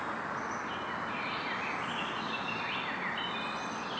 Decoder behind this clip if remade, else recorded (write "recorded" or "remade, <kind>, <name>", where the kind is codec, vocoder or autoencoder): recorded